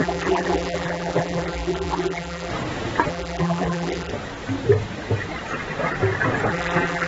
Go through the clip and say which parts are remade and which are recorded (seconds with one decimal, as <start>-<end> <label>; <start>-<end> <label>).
0.0-2.5 remade; 2.5-3.1 recorded; 3.1-4.1 remade; 4.1-6.5 recorded; 6.5-7.1 remade